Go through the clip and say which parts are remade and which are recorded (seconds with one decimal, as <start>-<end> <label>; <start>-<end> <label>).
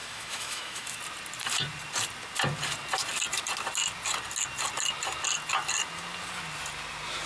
0.0-1.0 remade; 1.0-7.3 recorded